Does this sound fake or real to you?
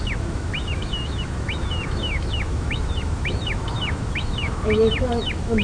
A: fake